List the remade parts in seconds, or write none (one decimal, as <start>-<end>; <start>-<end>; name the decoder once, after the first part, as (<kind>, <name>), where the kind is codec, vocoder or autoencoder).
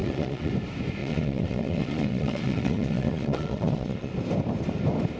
0.0-0.5 (vocoder, Vocos); 1.0-4.1